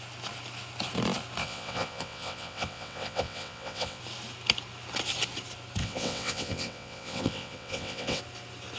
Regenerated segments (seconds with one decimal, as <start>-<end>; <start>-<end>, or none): 1.4-4.0; 5.8-8.2

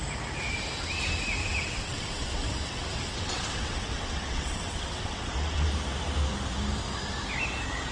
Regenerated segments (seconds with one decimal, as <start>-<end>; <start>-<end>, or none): 1.4-5.7